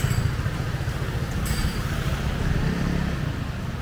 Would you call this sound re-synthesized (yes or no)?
no